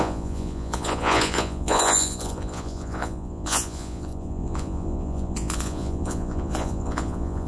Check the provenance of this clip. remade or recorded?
remade